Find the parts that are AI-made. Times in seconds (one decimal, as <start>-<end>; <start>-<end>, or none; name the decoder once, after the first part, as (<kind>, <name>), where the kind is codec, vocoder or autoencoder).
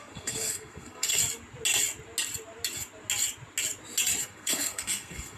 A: 0.0-1.2 (codec, SNAC); 4.2-5.4